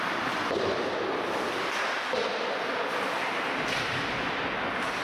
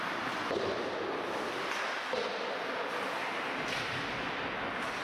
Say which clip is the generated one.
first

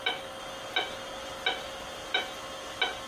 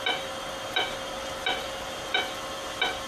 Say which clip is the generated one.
second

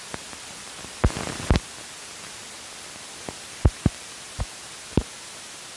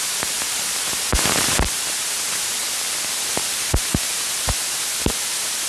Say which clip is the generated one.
second